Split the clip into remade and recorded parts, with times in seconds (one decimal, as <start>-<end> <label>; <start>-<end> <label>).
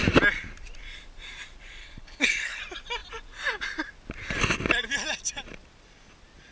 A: 0.0-1.8 recorded; 1.8-2.6 remade; 2.6-6.5 recorded